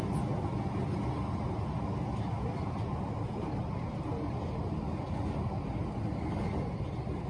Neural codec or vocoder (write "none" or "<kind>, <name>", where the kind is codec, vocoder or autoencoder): none